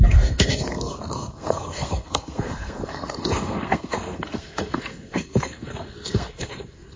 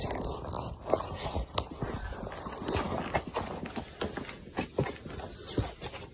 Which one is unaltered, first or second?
second